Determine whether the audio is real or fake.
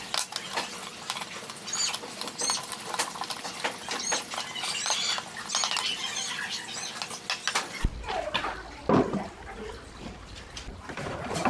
real